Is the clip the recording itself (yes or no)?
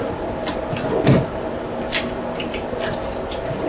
no